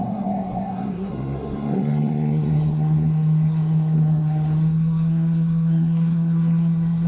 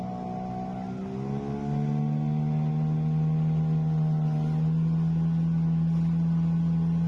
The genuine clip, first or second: second